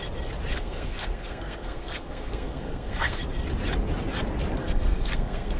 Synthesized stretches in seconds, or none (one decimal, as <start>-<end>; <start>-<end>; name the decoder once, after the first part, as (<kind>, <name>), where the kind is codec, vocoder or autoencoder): 0.5-3.2 (codec, SNAC); 4.6-5.6